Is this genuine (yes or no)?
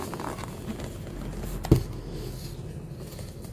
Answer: yes